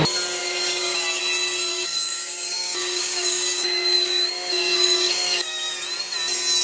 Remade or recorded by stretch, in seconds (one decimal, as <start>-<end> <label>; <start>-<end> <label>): 0.0-0.4 recorded; 0.4-1.2 remade; 1.2-1.7 recorded; 1.7-5.7 remade; 5.7-6.6 recorded